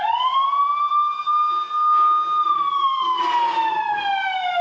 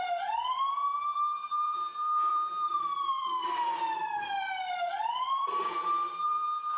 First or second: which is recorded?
first